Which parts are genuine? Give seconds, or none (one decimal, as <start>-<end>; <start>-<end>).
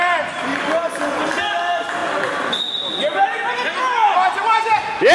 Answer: 0.0-0.5; 1.4-5.1